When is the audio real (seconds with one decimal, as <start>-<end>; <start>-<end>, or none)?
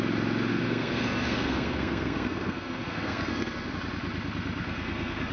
0.0-0.5; 3.7-4.6